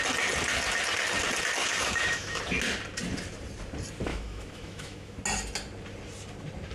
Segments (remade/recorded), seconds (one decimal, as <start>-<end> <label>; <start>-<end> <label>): 0.0-1.6 recorded; 1.6-2.4 remade; 2.4-4.1 recorded; 4.1-5.2 remade; 5.2-6.7 recorded